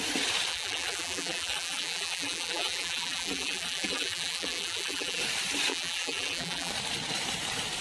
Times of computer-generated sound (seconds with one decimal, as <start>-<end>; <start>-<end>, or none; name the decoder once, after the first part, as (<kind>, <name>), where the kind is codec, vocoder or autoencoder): 0.5-5.2 (vocoder, BigVGAN v2); 5.7-6.7